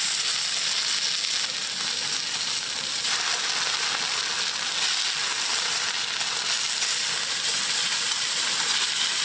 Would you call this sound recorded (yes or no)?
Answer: yes